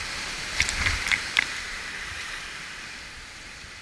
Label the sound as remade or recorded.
remade